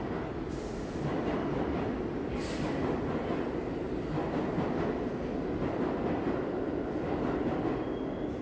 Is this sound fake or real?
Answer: real